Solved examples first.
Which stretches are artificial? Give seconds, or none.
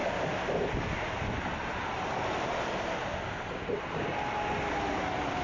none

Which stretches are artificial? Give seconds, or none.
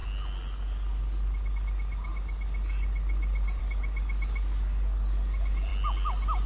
none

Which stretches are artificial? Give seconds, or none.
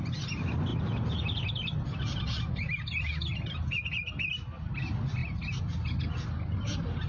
none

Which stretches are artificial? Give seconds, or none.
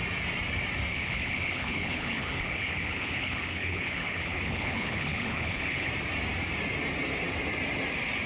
0.9-5.9 (codec, HILCodec)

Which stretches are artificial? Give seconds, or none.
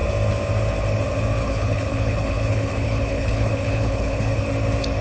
1.4-4.4 (codec, HILCodec)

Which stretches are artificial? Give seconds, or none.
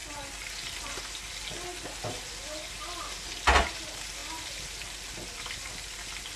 none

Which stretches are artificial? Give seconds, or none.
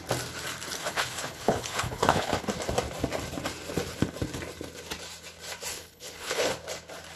0.8-2.4 (codec, HILCodec); 5.7-6.5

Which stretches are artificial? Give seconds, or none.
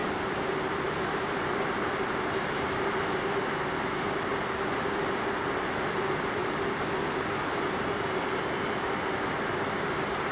none